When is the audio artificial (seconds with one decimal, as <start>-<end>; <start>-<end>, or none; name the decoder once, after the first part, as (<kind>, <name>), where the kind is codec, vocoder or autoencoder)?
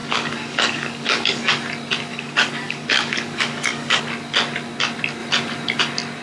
0.0-1.5 (codec, DAC); 2.1-4.0